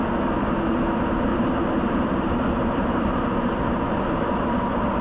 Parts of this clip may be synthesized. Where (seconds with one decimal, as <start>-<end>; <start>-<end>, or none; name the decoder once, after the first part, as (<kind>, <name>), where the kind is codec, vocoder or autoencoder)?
1.3-4.3 (vocoder, BigVGAN v2)